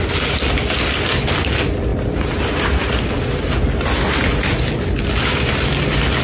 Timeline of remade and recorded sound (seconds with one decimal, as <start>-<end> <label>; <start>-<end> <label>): 0.0-1.9 recorded; 1.9-3.2 remade; 3.2-6.2 recorded